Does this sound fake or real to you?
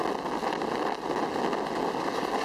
real